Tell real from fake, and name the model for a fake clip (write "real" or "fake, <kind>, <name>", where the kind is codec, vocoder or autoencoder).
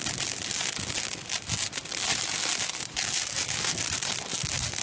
real